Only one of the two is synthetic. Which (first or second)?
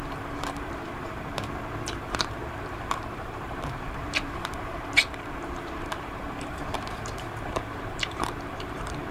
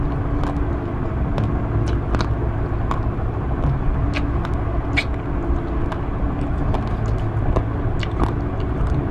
first